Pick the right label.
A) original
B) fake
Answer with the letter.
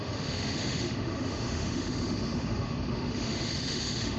B